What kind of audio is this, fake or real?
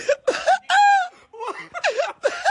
real